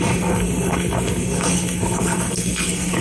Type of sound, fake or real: fake